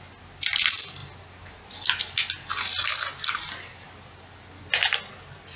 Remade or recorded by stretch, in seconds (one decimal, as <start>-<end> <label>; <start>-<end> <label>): 0.0-5.6 recorded